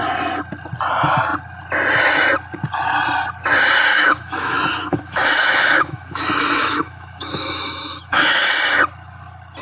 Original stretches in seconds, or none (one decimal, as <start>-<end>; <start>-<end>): 0.0-3.9; 8.5-9.6